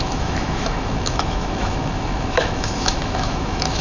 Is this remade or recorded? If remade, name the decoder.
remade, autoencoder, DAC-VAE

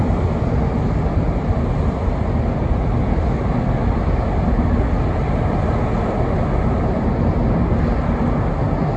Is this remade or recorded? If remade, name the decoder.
recorded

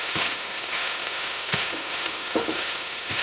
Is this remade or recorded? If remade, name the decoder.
remade, autoencoder, DAC-VAE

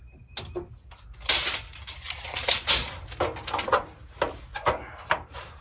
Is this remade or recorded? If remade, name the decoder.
recorded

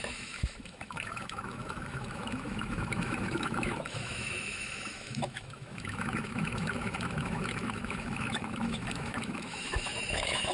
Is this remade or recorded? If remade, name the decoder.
remade, autoencoder, DAC-VAE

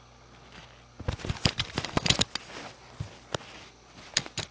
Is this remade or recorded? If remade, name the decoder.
recorded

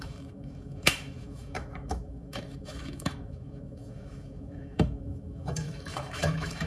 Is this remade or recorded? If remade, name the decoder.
remade, autoencoder, DAC-VAE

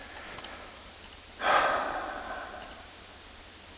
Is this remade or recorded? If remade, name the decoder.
recorded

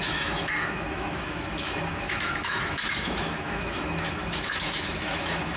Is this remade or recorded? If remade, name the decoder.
remade, autoencoder, DAC-VAE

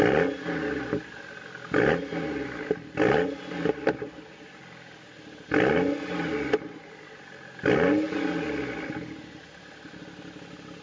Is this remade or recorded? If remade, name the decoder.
recorded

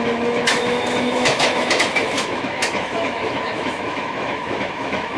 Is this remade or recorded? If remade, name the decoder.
remade, autoencoder, DAC-VAE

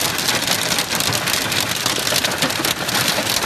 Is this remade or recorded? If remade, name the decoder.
recorded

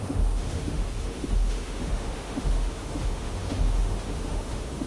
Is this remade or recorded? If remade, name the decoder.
remade, autoencoder, DAC-VAE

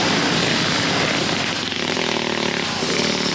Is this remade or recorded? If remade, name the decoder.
recorded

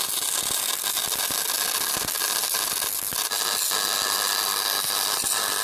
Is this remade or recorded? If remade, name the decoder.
recorded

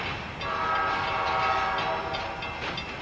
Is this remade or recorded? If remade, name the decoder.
recorded